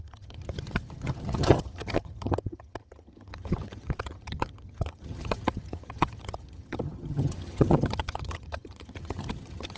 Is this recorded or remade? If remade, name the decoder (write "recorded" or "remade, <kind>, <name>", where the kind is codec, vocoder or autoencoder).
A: remade, vocoder, HiFi-GAN